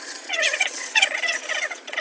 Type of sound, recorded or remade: remade